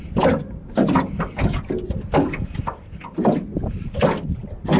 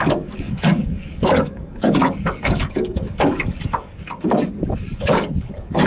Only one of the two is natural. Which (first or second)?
first